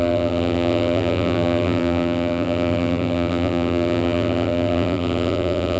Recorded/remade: remade